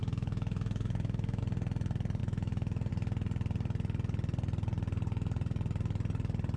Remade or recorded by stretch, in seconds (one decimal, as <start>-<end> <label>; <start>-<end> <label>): 0.0-1.4 remade; 1.4-2.2 recorded; 2.2-2.9 remade; 2.9-6.6 recorded